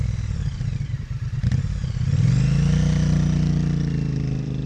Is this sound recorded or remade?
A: remade